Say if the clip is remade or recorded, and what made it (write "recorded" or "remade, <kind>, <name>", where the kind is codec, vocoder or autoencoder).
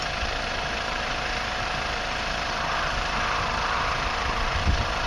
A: remade, vocoder, BigVGAN v2